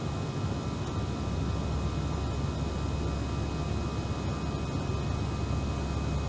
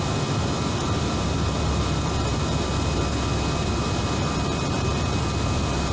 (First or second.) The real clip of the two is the first